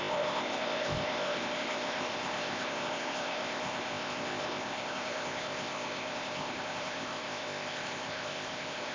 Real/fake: fake